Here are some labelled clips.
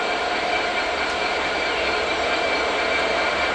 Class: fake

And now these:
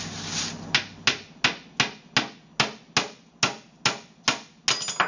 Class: real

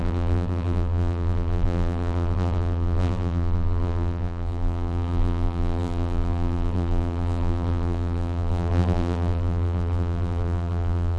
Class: fake